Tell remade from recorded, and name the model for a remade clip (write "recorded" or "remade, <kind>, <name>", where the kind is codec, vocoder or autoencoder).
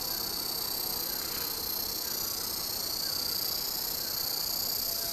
recorded